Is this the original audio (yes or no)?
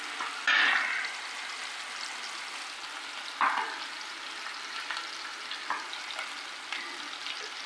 yes